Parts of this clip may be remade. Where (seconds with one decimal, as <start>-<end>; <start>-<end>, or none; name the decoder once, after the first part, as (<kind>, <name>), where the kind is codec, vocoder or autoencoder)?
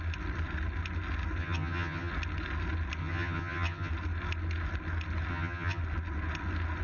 1.4-2.1 (vocoder, HiFi-GAN); 3.0-3.9; 5.3-5.8